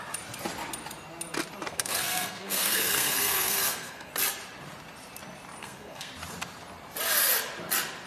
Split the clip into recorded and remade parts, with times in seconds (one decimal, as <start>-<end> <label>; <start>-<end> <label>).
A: 0.0-1.7 recorded; 1.7-4.1 remade; 4.1-5.6 recorded; 5.6-6.1 remade; 6.1-8.1 recorded